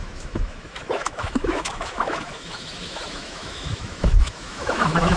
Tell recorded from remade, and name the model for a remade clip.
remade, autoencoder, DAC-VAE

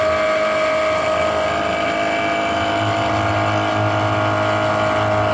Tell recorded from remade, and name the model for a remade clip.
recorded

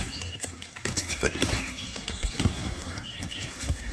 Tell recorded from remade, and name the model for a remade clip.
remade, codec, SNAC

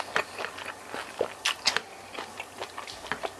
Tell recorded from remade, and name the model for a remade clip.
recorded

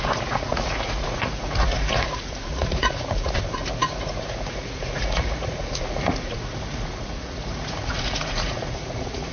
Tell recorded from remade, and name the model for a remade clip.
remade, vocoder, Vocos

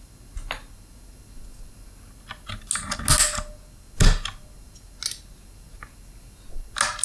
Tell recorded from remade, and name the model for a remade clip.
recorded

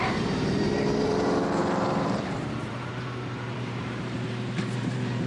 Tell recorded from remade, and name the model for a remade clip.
remade, vocoder, BigVGAN v2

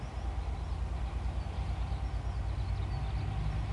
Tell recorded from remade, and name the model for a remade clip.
recorded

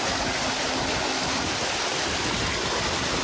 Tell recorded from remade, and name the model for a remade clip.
recorded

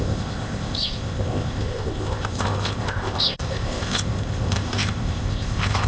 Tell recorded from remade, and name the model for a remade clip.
remade, codec, ZipCodec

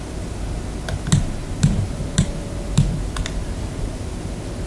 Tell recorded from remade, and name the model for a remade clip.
recorded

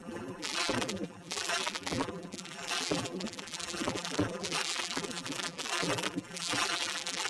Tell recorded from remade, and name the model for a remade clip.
remade, vocoder, BigVGAN v2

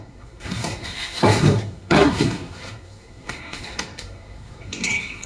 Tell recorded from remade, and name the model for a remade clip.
remade, codec, SNAC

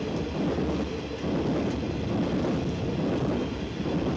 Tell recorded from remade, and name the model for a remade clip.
recorded